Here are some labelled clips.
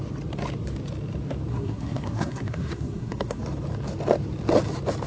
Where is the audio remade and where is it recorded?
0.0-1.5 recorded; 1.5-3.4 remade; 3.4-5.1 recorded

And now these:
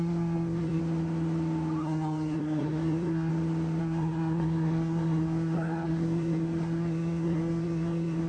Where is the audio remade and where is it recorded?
0.0-0.8 remade; 0.8-1.8 recorded; 1.8-3.3 remade; 3.3-3.8 recorded; 3.8-8.3 remade